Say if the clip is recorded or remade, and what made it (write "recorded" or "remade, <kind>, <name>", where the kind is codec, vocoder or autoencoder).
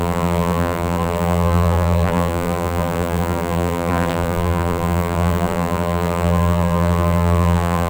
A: remade, vocoder, BigVGAN v2